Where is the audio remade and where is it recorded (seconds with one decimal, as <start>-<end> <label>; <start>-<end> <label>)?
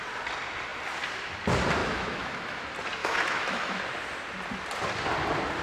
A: 0.0-1.8 recorded; 1.8-2.6 remade; 2.6-3.0 recorded; 3.0-3.8 remade; 3.8-5.6 recorded